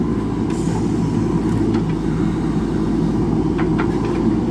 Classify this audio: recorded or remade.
recorded